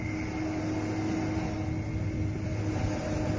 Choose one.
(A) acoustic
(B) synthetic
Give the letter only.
A